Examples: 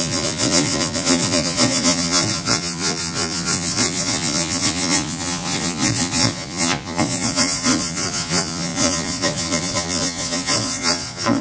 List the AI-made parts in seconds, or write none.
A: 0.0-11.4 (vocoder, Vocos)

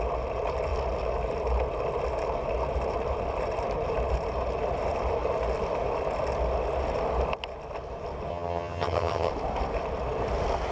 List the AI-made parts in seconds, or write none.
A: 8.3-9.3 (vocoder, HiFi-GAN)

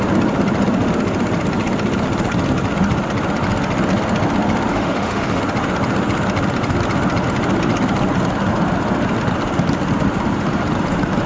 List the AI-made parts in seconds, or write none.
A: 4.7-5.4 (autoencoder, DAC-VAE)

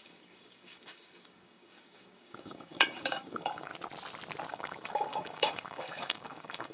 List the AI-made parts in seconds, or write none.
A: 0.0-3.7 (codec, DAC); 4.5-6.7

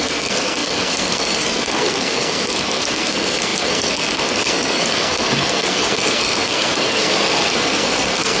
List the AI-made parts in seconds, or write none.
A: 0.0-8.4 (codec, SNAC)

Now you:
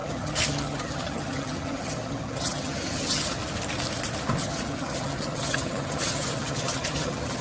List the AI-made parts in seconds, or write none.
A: 0.0-3.4 (vocoder, HiFi-GAN); 4.4-7.4

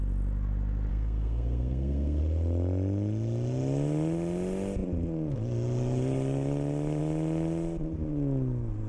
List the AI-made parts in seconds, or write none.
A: 0.9-2.2 (codec, SNAC)

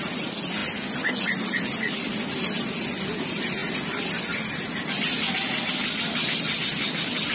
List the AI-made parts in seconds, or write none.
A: none